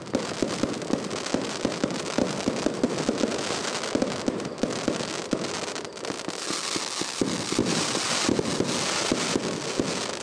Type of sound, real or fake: real